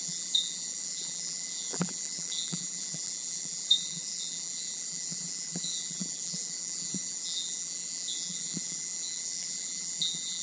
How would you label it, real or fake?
fake